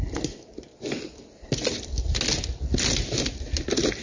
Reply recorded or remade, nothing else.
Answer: recorded